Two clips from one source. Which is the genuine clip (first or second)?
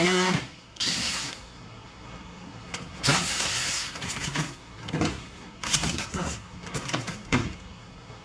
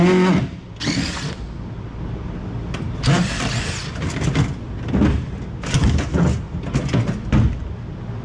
second